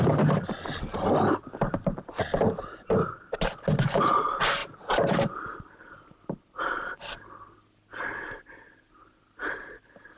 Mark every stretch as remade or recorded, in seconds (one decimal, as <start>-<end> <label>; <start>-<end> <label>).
0.0-10.2 recorded